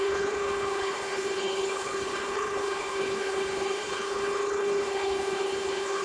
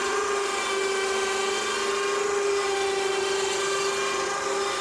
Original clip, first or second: second